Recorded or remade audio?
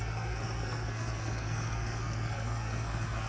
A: remade